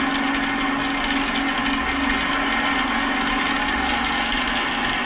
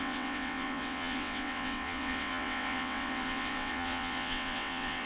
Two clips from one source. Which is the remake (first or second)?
second